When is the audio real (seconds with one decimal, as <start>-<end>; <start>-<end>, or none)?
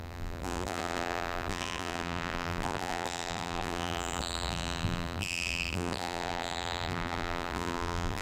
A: none